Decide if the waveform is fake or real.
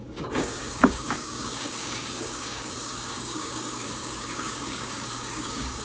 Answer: fake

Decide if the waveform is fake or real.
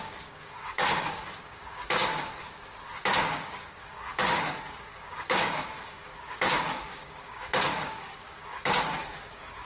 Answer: fake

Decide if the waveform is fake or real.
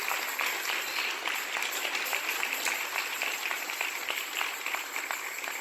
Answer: real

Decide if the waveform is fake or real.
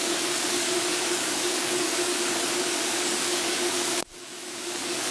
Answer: fake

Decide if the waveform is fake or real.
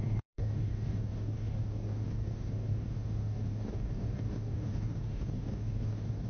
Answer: fake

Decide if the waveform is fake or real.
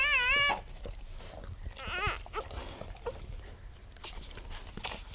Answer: real